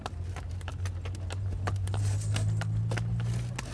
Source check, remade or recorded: recorded